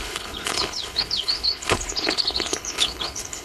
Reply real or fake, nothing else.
fake